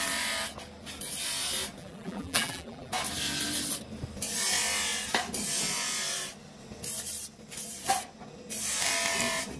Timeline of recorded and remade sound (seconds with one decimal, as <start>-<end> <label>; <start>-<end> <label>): 0.0-1.8 recorded; 1.8-2.9 remade; 2.9-9.6 recorded